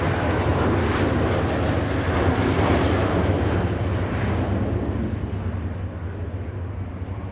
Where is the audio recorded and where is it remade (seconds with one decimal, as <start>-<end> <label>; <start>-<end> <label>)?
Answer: 0.0-0.5 remade; 0.5-1.8 recorded; 1.8-7.3 remade